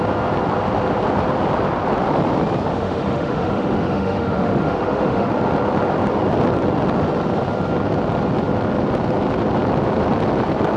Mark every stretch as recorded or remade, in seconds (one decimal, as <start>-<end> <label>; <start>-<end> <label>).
0.0-2.7 recorded; 2.7-5.3 remade; 5.3-10.8 recorded